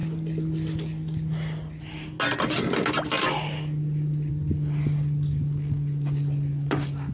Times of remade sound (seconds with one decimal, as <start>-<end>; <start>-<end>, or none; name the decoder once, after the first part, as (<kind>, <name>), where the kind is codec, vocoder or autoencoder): none